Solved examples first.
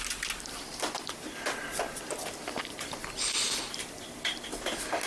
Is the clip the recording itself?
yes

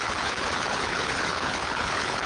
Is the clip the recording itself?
no